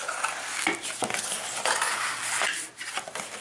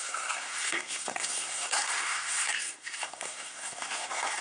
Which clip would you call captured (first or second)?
first